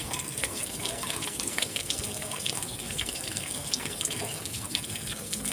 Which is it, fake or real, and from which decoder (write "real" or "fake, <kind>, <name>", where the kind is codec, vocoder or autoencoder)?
fake, codec, SNAC